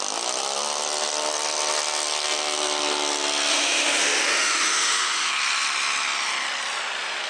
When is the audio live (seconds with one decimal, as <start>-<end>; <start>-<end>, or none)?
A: 0.0-3.5; 5.3-7.3